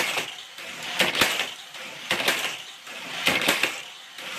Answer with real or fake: real